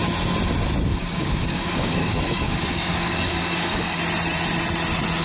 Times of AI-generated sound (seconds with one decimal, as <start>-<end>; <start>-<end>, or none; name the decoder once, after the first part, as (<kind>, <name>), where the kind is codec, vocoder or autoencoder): 0.9-4.0 (codec, DAC)